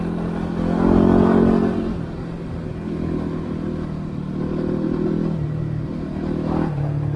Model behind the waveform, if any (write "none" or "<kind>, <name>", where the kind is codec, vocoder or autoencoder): none